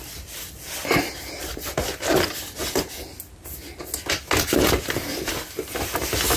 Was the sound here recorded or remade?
recorded